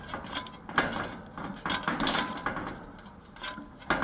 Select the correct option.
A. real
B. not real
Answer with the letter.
A